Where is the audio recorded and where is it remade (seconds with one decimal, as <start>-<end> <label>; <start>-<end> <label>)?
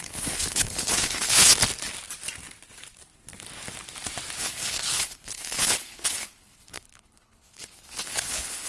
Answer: 0.0-1.5 remade; 1.5-4.4 recorded; 4.4-8.7 remade